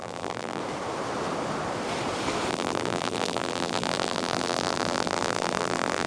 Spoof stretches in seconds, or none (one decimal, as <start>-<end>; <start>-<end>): 0.0-0.6; 2.5-6.1